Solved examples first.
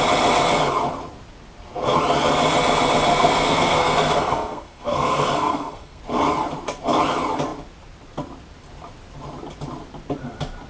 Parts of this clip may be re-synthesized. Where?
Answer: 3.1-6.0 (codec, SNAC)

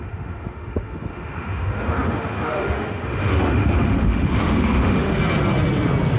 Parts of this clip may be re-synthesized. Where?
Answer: 0.0-5.2 (autoencoder, DAC-VAE)

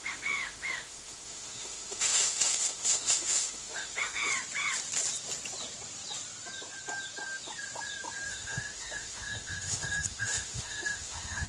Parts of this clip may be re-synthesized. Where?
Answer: 0.0-4.3 (autoencoder, DAC-VAE); 8.3-11.5

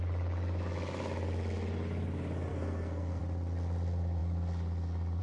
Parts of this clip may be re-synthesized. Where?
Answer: 2.5-3.2 (codec, SNAC)

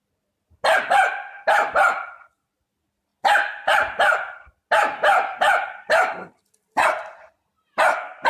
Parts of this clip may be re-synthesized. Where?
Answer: none

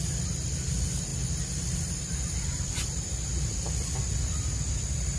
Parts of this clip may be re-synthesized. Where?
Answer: none